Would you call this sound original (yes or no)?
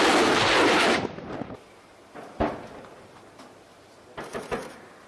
yes